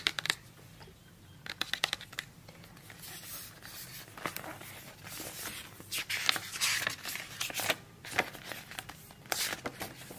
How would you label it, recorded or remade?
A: recorded